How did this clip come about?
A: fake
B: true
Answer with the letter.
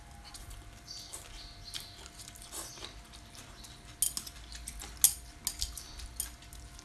B